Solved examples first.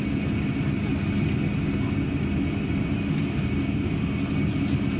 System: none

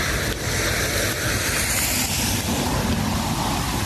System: none